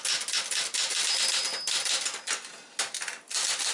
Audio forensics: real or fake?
real